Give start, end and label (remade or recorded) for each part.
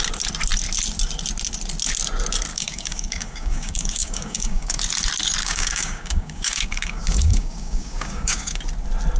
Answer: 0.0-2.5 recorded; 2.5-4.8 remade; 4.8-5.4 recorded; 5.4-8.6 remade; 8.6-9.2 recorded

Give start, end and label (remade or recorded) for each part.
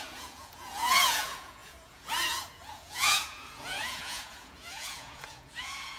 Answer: 0.0-6.0 remade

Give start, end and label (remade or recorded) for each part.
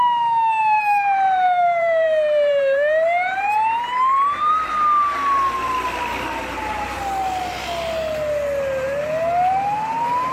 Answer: 0.0-0.6 recorded; 0.6-4.5 remade; 4.5-10.3 recorded